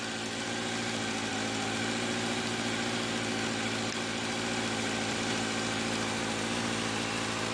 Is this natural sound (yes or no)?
yes